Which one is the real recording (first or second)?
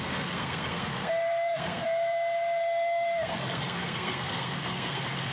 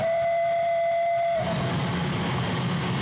second